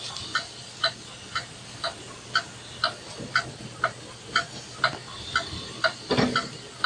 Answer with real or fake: real